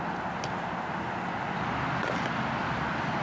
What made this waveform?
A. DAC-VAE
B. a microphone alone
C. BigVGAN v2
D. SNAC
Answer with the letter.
B